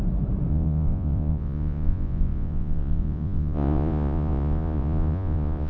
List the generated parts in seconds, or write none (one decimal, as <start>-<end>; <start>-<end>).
0.5-5.7